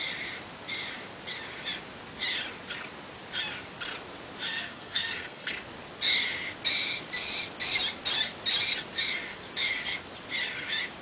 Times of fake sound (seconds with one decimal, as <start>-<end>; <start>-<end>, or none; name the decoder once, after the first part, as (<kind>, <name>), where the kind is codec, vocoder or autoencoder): 4.5-5.5 (codec, SNAC)